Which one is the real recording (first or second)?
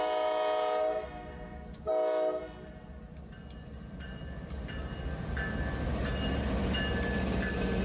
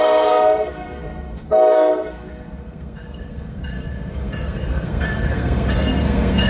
first